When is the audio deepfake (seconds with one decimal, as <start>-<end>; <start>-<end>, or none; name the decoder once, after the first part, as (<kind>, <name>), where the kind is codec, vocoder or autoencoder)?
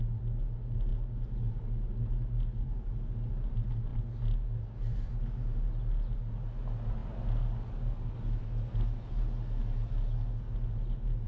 none